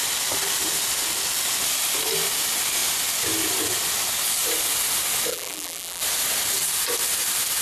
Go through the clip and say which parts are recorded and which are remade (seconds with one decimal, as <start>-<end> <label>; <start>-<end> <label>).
0.0-5.3 recorded; 5.3-6.0 remade; 6.0-7.6 recorded